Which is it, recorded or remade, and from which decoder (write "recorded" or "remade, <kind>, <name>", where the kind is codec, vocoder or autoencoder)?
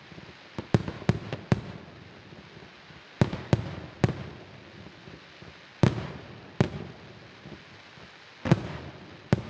recorded